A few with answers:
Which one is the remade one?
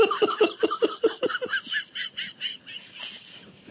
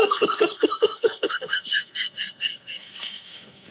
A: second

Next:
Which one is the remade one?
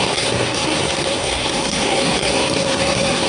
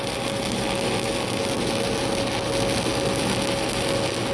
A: first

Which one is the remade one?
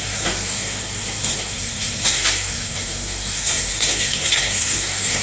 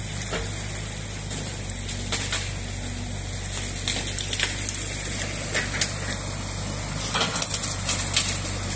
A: first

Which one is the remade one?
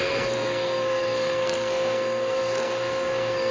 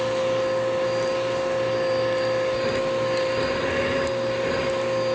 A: first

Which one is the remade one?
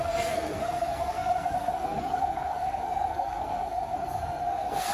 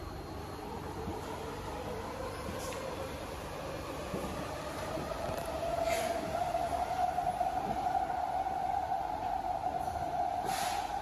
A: first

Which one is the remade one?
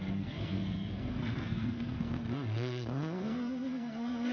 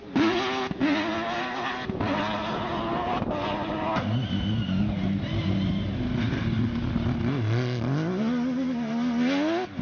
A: first